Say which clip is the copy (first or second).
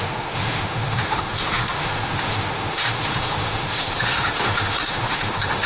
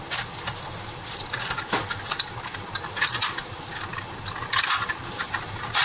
first